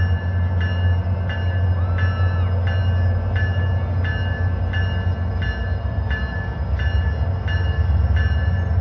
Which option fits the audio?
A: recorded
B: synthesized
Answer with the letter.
A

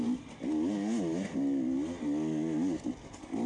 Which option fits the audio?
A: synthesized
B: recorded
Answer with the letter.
B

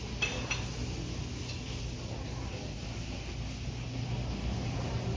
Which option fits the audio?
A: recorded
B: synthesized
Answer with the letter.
A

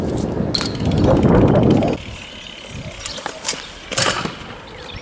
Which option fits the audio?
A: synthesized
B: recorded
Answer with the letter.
B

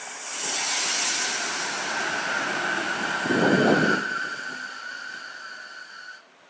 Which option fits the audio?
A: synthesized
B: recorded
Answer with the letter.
B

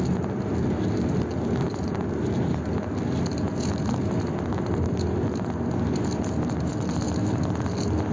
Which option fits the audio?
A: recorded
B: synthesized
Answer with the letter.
A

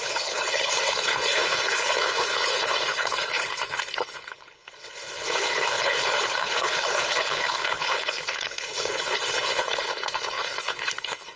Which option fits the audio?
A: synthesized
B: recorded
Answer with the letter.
A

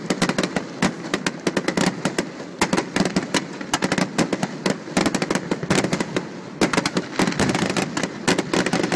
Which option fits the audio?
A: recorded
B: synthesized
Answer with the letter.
A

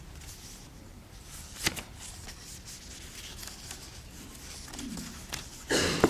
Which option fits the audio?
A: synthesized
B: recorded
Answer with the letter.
A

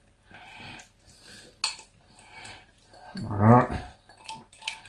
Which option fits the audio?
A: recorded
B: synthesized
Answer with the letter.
A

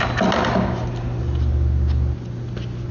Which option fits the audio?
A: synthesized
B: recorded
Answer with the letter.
B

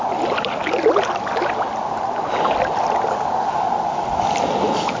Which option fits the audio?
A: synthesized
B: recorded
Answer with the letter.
B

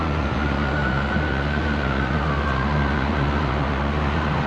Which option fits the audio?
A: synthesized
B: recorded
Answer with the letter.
A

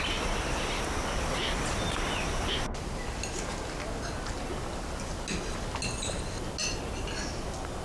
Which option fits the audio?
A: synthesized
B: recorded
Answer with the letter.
B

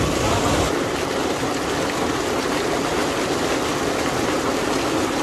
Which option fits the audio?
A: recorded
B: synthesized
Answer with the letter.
A